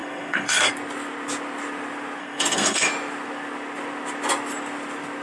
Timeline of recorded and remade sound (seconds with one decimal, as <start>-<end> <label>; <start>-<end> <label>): 0.0-0.7 remade; 0.7-2.2 recorded; 2.2-2.9 remade; 2.9-5.2 recorded

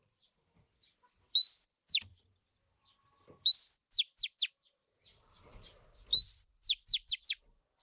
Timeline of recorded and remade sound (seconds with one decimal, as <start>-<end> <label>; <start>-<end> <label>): 0.0-7.8 recorded

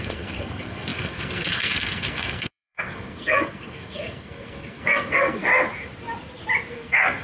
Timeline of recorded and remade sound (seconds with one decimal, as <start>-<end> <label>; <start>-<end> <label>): 0.0-5.5 remade; 5.5-6.7 recorded; 6.7-7.2 remade

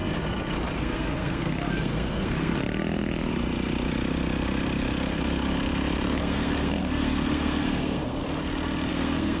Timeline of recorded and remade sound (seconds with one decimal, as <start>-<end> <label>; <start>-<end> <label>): 0.0-0.8 recorded; 0.8-2.5 remade; 2.5-6.2 recorded; 6.2-8.2 remade; 8.2-8.9 recorded; 8.9-9.4 remade

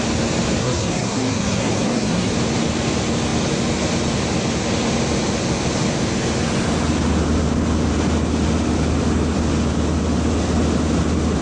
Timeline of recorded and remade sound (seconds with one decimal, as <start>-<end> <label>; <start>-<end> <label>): 0.0-0.6 recorded; 0.6-2.3 remade; 2.3-11.4 recorded

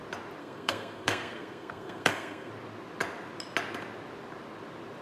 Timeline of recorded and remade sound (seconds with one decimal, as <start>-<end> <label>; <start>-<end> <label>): 0.0-0.4 recorded; 0.4-2.5 remade; 2.5-5.0 recorded

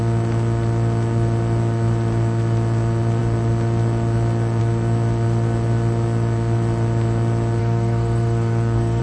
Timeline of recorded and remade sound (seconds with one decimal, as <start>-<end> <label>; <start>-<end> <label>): 0.0-7.6 recorded; 7.6-9.0 remade